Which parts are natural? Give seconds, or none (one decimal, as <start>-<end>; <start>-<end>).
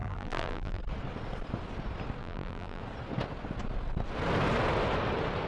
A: 0.8-2.2; 2.8-5.5